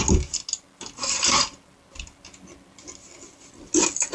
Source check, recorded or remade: recorded